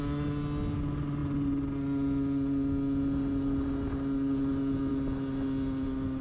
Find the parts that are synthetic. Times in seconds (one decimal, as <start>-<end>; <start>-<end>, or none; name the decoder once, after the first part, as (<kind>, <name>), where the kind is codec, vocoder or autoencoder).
none